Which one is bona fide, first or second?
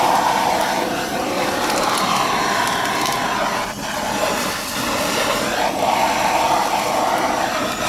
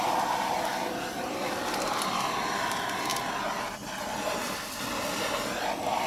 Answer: second